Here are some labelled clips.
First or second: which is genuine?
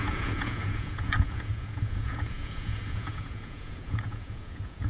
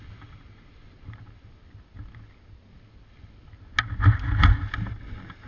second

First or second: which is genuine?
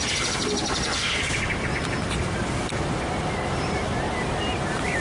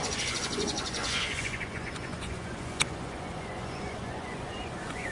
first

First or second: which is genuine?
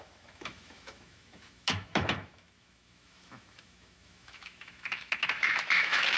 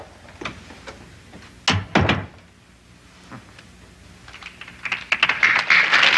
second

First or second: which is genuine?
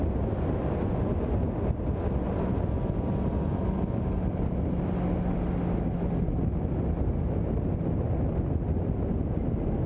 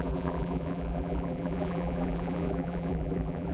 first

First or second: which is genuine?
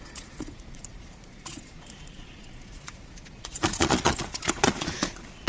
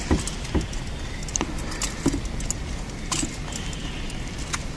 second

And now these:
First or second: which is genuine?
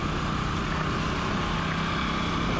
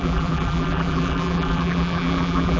first